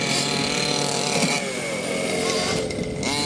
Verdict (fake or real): real